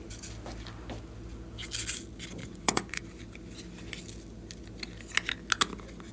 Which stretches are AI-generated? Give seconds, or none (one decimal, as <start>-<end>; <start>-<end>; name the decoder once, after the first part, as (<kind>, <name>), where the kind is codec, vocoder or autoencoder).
2.4-3.0 (vocoder, Vocos)